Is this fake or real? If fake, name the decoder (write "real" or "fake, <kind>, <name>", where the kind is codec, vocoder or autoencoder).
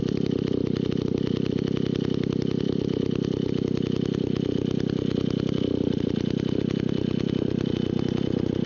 real